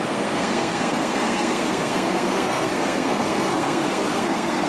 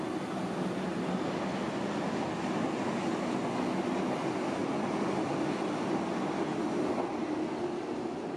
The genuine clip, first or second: second